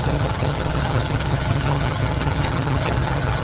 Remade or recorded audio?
remade